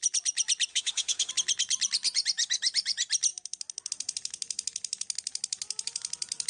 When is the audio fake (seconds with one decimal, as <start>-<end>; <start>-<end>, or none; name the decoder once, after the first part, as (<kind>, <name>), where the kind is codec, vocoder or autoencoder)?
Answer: 0.7-1.3 (autoencoder, DAC-VAE)

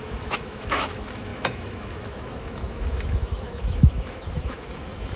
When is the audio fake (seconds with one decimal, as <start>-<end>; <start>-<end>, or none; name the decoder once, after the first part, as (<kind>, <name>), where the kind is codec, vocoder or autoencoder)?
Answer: 0.0-5.2 (autoencoder, DAC-VAE)

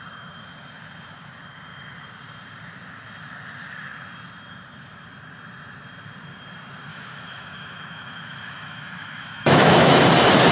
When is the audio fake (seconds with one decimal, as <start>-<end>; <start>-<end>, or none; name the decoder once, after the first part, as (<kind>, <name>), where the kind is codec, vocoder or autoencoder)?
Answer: 6.9-10.0 (autoencoder, DAC-VAE)

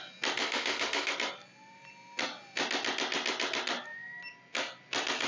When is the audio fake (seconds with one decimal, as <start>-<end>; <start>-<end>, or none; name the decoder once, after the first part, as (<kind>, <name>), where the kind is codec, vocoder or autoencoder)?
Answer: 0.4-1.1 (autoencoder, DAC-VAE)

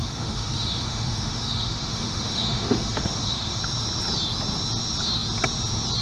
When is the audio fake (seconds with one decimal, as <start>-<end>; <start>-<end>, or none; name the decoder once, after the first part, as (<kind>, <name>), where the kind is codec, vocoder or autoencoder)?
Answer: 0.0-3.6 (autoencoder, DAC-VAE)

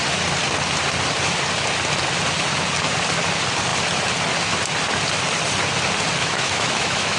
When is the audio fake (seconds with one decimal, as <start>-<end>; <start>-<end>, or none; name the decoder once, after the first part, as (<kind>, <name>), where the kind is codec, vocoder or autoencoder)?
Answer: 6.2-7.2 (autoencoder, DAC-VAE)